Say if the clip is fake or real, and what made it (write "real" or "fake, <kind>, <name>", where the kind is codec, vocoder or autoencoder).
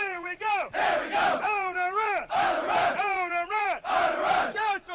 fake, vocoder, Vocos